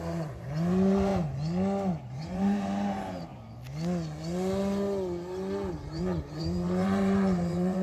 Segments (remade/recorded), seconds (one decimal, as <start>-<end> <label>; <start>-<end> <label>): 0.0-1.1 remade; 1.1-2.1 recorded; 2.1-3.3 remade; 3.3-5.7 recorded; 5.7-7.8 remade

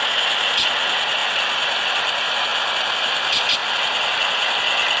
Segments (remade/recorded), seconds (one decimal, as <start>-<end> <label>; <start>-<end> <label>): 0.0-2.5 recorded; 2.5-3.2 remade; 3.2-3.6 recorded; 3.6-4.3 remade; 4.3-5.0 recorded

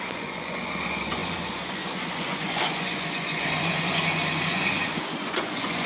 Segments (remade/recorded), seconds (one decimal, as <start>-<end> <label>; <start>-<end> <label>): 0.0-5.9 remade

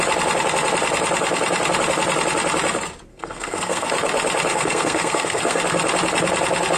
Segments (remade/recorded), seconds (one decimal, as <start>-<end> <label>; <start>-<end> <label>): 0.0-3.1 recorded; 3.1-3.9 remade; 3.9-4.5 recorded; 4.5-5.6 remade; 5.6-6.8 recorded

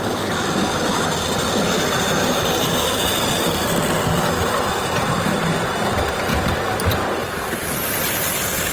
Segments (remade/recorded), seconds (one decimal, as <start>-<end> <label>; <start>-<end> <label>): 0.0-6.3 recorded; 6.3-8.7 remade

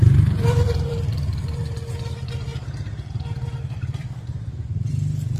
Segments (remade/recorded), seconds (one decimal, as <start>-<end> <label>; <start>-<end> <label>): 0.0-1.6 remade; 1.6-2.1 recorded; 2.1-2.5 remade; 2.5-4.0 recorded; 4.0-5.4 remade